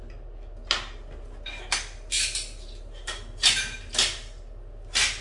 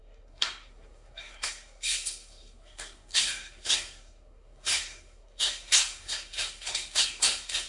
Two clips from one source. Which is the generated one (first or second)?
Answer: second